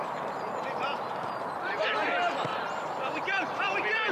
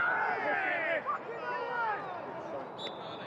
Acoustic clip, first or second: second